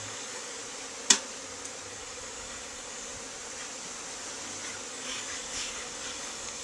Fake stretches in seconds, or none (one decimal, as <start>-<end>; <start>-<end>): 0.0-0.6; 1.9-3.1; 4.9-6.6